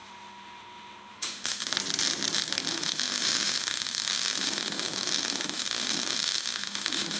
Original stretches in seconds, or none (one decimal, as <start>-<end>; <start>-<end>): 1.7-2.7